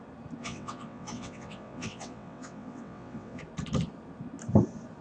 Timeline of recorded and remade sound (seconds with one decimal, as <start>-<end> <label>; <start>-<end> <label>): 0.0-0.4 recorded; 0.4-3.4 remade; 3.4-5.0 recorded